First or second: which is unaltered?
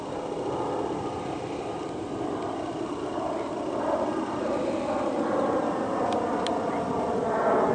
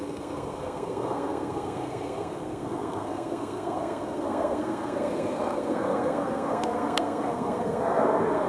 first